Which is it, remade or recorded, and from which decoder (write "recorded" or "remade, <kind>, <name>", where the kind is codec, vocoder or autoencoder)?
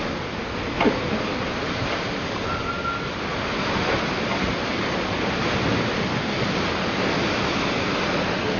recorded